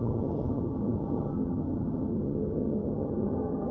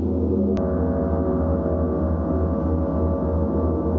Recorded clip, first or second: second